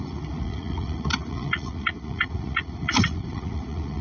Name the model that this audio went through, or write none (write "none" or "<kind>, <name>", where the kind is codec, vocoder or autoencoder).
vocoder, Vocos